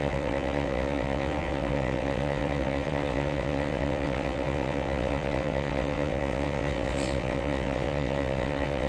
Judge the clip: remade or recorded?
remade